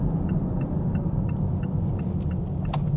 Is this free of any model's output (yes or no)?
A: yes